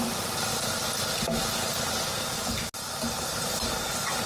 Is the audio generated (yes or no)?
no